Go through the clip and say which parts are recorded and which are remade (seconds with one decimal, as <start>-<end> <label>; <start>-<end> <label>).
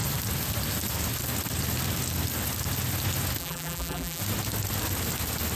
0.0-3.4 recorded; 3.4-4.2 remade; 4.2-5.6 recorded